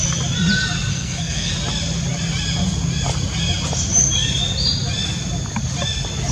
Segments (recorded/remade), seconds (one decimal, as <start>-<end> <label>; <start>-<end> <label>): 0.0-0.9 recorded; 0.9-1.5 remade; 1.5-6.3 recorded